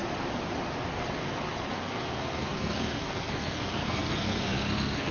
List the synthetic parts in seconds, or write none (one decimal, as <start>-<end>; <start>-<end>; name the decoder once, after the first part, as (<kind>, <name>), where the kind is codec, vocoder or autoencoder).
1.7-5.1 (codec, SNAC)